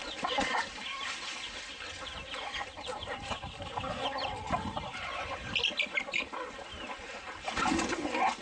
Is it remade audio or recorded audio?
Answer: recorded